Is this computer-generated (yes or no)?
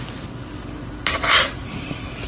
no